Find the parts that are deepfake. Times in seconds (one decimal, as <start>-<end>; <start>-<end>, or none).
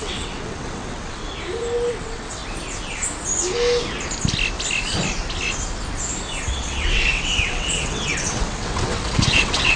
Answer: 0.0-1.2; 1.9-2.4; 6.4-9.8